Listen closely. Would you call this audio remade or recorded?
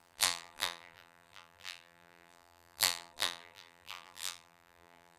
remade